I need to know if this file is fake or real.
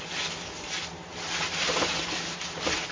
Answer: real